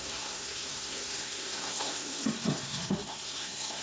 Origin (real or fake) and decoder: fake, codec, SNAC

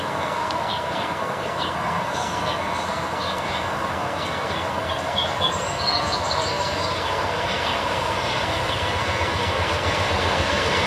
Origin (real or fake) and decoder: fake, codec, SNAC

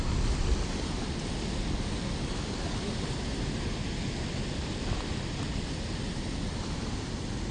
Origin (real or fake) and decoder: real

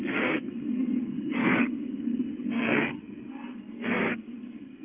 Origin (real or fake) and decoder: fake, codec, SNAC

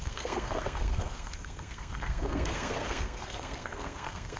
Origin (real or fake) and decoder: fake, codec, SNAC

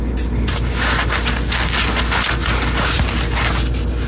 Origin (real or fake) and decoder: real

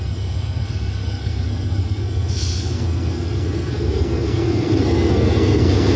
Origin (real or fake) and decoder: fake, codec, SNAC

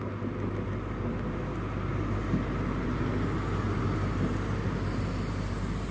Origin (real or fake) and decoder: real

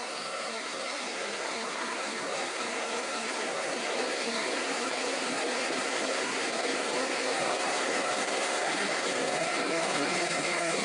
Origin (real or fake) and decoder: fake, codec, SNAC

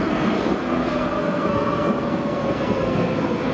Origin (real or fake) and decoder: fake, codec, SNAC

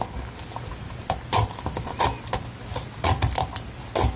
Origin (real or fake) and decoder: real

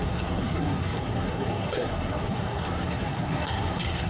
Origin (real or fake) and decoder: fake, codec, SNAC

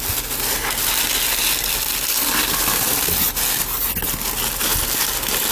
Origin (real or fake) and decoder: real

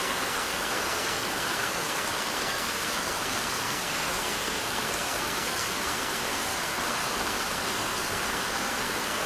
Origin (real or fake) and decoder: fake, codec, SNAC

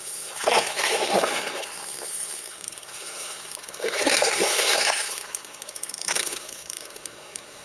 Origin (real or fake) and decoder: fake, codec, SNAC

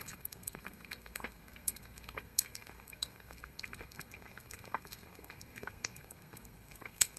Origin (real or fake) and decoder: fake, codec, SNAC